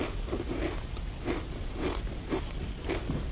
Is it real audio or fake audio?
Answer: real